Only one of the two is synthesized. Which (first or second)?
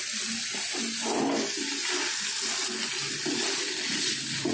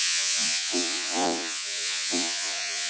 second